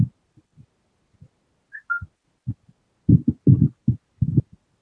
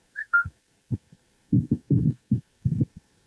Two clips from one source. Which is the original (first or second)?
first